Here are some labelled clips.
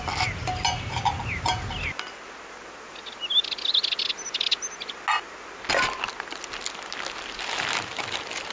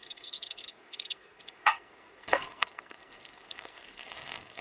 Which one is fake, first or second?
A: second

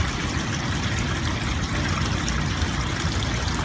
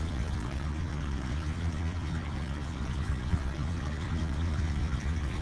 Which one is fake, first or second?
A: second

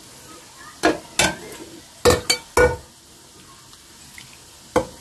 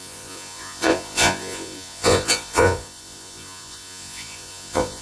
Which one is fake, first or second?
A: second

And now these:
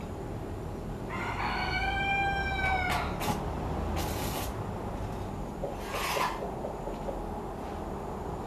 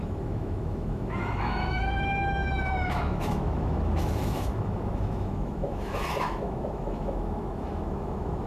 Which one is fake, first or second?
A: second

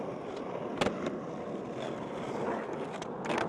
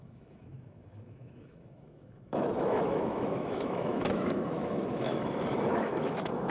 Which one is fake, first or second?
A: second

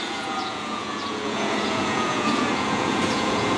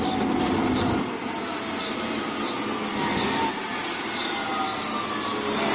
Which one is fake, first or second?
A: first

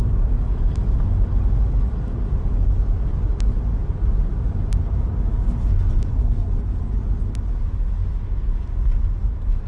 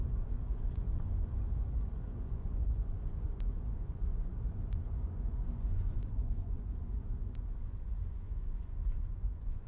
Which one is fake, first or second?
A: second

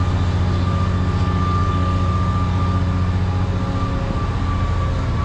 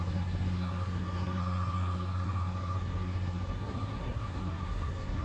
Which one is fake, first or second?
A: second